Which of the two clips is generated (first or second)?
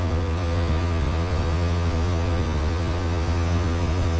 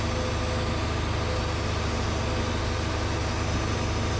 first